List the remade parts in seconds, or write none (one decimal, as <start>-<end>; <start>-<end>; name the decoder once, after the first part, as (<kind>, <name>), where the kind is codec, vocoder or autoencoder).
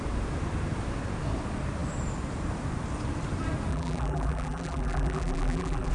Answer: 3.7-5.9 (vocoder, BigVGAN v2)